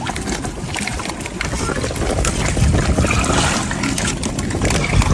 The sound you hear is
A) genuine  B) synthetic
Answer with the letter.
A